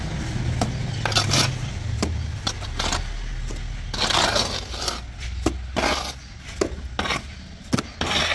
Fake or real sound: real